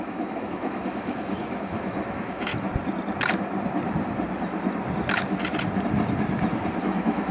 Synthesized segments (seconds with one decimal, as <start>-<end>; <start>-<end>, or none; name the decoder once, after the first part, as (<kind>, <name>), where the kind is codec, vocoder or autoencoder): 0.0-2.5 (autoencoder, DAC-VAE); 6.8-7.3